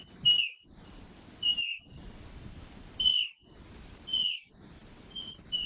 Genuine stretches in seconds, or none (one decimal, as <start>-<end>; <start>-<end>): 0.0-1.7; 3.1-5.7